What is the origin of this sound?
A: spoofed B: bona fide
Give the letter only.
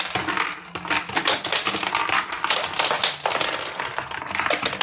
B